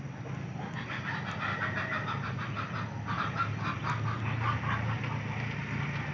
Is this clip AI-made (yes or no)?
no